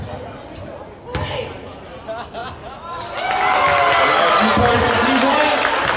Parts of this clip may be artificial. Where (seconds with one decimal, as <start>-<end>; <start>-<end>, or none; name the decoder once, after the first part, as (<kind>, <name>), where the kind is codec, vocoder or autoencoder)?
none